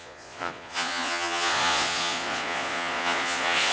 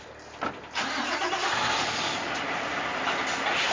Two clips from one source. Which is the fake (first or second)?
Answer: first